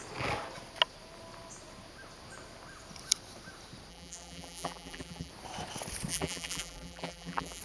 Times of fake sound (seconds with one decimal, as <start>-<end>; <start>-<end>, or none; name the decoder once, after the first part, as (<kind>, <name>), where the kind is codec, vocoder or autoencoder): 3.9-5.3 (vocoder, BigVGAN v2); 6.1-7.6